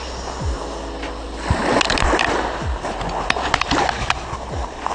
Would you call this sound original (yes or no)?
yes